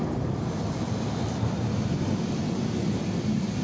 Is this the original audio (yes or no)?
yes